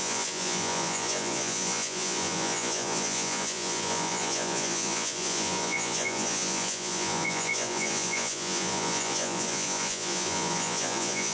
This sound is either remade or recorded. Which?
remade